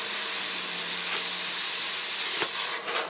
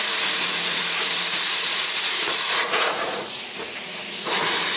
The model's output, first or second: second